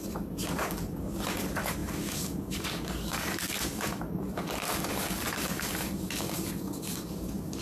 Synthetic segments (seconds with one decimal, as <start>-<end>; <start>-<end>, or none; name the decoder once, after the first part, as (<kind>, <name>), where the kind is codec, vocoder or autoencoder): 0.0-7.6 (codec, DAC)